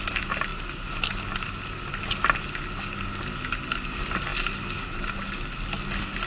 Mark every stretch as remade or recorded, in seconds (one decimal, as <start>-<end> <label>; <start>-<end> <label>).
0.0-6.3 recorded